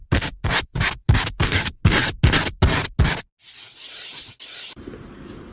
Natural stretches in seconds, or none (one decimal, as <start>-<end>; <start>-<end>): 0.0-0.6; 1.8-5.1